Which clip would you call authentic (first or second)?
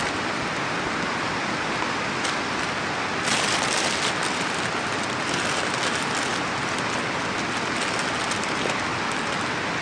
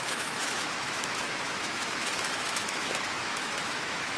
first